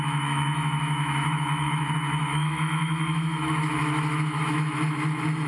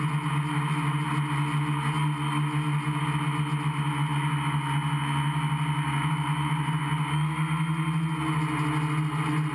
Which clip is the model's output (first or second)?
first